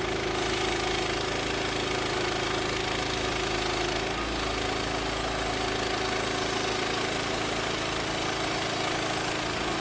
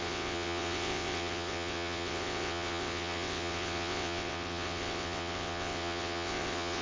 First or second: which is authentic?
first